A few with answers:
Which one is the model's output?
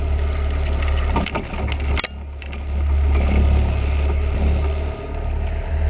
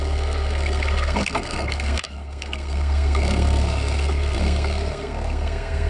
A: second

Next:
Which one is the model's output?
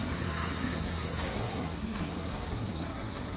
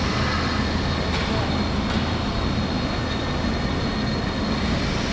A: first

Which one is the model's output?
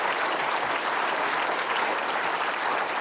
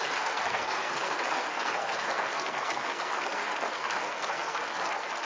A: second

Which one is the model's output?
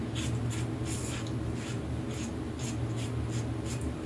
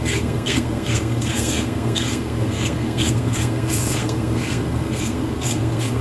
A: second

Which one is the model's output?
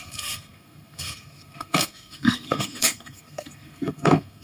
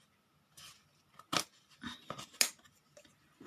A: first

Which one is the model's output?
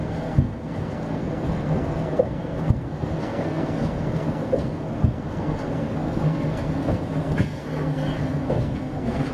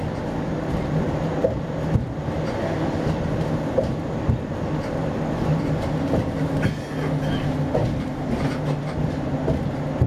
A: first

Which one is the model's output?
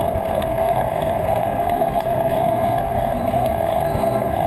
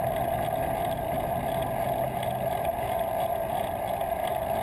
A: first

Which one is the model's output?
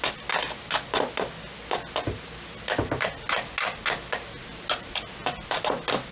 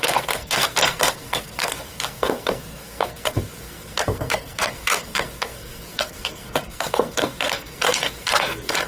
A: second